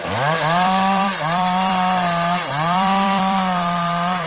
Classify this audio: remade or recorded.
remade